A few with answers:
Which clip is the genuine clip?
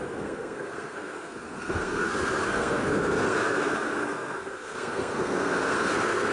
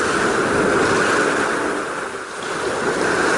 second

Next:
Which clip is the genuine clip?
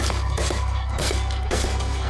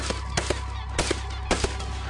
second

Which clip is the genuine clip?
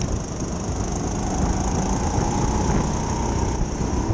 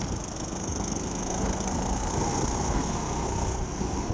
first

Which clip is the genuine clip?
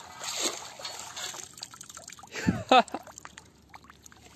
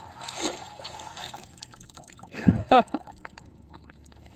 first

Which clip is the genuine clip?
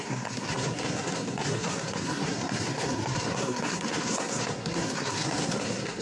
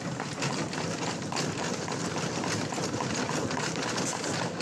second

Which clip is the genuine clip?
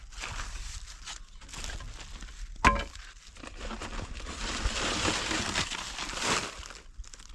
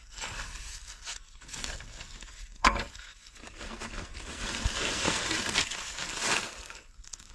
first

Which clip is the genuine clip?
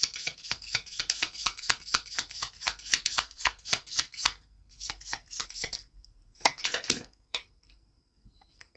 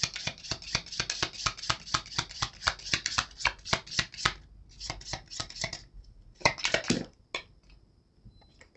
second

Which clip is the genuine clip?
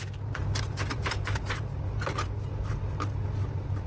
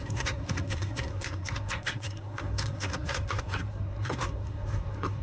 first